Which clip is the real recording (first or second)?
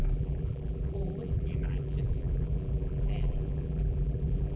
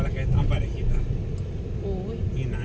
second